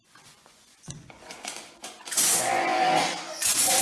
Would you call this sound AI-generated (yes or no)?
yes